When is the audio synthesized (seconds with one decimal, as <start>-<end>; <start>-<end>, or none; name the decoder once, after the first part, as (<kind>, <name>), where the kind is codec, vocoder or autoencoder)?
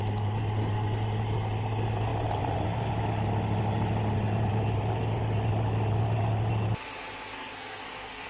7.4-8.3 (codec, SNAC)